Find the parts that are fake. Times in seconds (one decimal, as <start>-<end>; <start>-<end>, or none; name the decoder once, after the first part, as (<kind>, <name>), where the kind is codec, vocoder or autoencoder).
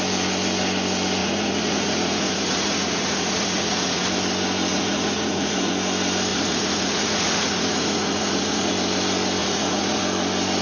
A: 1.2-4.0 (vocoder, Vocos); 4.7-5.7; 6.3-8.7; 9.4-10.0